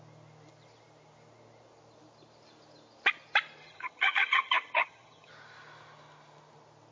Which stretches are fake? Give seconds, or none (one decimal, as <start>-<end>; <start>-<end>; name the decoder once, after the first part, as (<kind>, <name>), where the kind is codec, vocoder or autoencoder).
3.6-5.3 (vocoder, HiFi-GAN)